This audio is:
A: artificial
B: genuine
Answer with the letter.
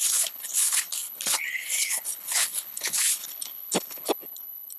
A